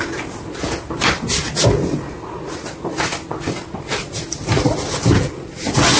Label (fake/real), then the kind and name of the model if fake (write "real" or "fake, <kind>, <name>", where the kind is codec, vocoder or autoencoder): real